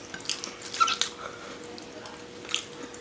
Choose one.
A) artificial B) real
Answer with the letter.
B